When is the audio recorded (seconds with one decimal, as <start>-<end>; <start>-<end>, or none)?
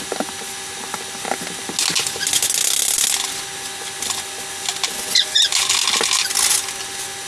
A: 0.0-7.3